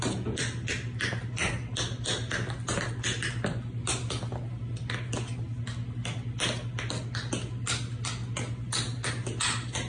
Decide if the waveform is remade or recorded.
recorded